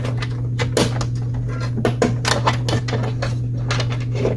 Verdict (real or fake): real